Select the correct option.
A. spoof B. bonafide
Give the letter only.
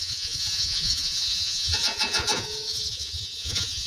A